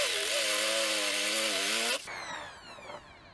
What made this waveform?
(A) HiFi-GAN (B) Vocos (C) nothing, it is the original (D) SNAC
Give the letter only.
C